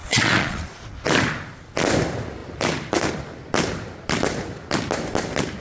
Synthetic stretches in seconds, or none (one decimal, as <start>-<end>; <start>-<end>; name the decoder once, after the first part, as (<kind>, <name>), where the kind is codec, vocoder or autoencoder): 0.0-0.9 (vocoder, Vocos)